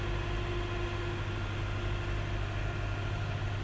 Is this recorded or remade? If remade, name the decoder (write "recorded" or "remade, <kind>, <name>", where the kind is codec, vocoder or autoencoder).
recorded